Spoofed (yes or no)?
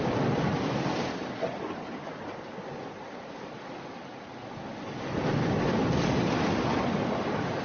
no